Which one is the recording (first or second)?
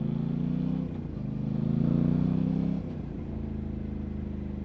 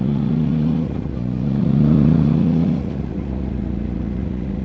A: first